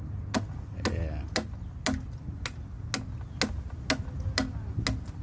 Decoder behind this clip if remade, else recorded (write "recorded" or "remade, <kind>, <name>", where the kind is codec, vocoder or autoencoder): recorded